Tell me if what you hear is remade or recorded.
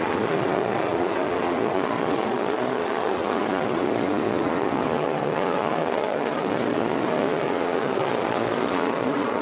remade